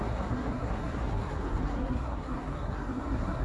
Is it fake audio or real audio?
fake